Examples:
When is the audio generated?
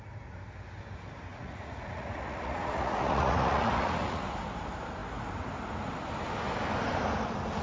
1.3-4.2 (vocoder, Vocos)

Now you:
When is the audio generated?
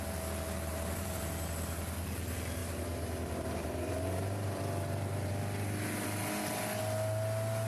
0.7-1.3 (vocoder, BigVGAN v2); 2.6-5.3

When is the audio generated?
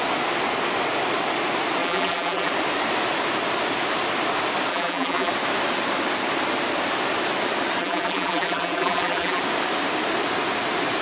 1.8-2.5 (vocoder, BigVGAN v2); 4.7-5.3; 7.8-9.4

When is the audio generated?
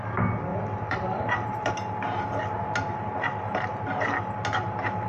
0.5-1.7 (vocoder, BigVGAN v2)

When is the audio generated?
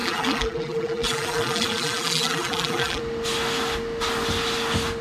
0.0-3.0 (vocoder, BigVGAN v2)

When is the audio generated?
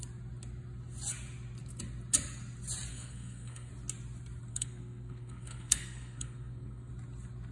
2.9-3.7 (codec, SNAC); 4.5-6.9